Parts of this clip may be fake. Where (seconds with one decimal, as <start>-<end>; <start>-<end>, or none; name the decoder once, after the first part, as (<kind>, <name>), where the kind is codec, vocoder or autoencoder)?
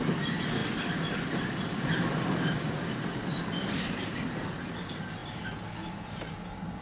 0.6-4.7 (vocoder, BigVGAN v2)